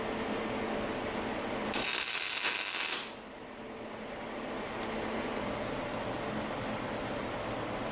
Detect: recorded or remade remade